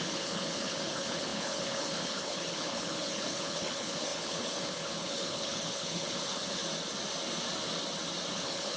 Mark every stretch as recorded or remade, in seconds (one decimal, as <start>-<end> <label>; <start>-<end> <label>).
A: 0.0-6.6 remade; 6.6-8.3 recorded; 8.3-8.8 remade